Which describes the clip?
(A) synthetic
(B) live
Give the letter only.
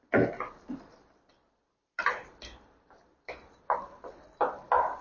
B